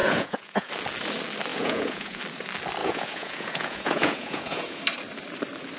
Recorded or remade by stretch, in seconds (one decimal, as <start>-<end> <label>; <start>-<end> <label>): 0.0-0.7 remade; 0.7-1.5 recorded; 1.5-2.2 remade; 2.2-2.8 recorded; 2.8-4.8 remade; 4.8-5.8 recorded